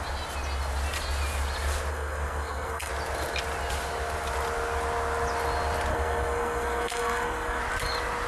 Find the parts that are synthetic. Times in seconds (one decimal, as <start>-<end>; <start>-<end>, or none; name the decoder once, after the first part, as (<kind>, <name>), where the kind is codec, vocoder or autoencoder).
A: 1.9-2.9 (codec, SNAC); 5.9-7.6